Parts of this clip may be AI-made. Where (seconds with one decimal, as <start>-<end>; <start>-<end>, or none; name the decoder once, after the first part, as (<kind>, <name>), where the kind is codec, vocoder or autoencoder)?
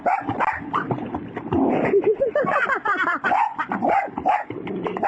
0.0-1.2 (vocoder, BigVGAN v2); 2.9-5.1